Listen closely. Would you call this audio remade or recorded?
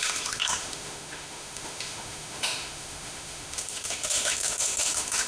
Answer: remade